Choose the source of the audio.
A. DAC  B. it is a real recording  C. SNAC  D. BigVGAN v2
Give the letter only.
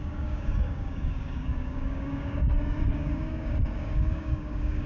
A